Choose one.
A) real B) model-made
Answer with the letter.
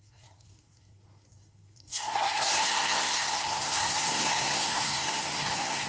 B